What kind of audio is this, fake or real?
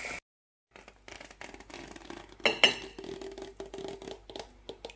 real